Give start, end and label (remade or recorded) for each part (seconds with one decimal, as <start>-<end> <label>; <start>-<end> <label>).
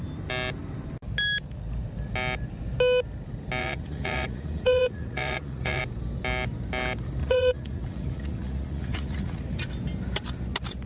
0.0-3.6 recorded; 3.6-5.8 remade; 5.8-7.2 recorded; 7.2-9.4 remade; 9.4-10.9 recorded